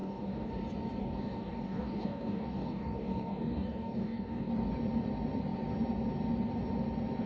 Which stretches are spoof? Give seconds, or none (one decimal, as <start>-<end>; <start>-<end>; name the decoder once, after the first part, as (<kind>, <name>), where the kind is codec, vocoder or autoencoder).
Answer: 0.0-0.5 (codec, DAC); 1.0-4.5